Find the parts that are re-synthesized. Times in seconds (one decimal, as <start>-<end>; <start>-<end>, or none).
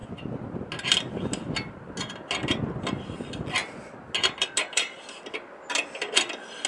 none